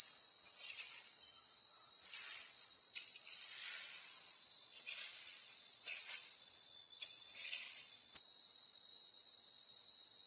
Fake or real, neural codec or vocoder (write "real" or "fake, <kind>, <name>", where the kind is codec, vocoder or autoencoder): fake, vocoder, Vocos